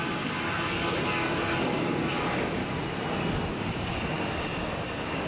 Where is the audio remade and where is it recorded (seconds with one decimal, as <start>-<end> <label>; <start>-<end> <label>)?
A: 0.0-2.6 remade; 2.6-3.5 recorded; 3.5-5.3 remade